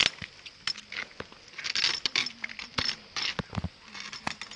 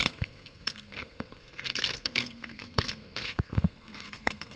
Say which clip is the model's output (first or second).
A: second